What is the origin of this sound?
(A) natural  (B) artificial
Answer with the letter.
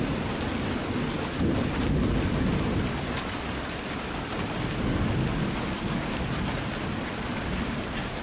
A